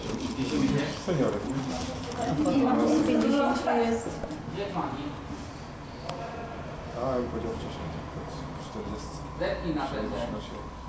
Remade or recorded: recorded